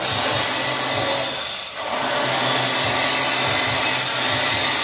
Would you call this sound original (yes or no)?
yes